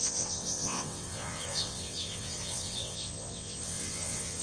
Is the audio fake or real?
fake